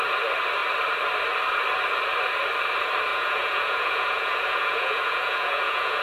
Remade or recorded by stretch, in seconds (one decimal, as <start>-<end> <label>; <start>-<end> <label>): 0.0-3.1 recorded; 3.1-6.0 remade